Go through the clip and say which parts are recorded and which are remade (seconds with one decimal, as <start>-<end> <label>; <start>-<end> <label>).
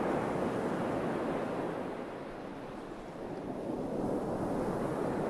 0.0-5.3 recorded